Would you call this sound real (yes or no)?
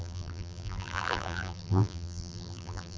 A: no